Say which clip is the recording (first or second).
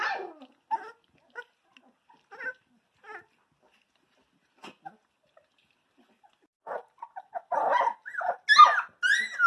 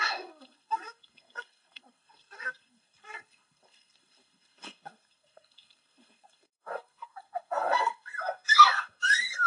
first